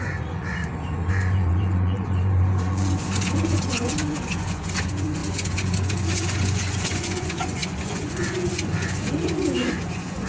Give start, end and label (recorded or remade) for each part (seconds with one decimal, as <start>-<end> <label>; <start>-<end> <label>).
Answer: 0.0-0.6 remade; 0.6-1.1 recorded; 1.1-10.3 remade